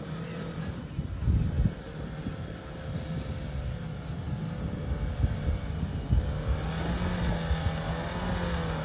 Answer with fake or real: real